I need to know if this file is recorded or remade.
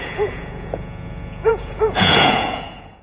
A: remade